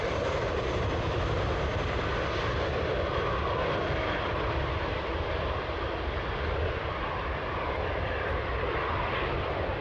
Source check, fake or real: real